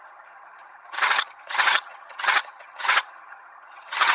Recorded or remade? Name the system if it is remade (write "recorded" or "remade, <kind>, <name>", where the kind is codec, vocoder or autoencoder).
remade, vocoder, HiFi-GAN